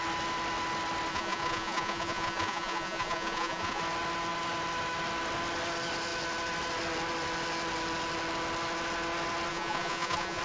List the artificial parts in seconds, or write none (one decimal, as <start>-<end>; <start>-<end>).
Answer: 1.1-3.8; 9.5-10.4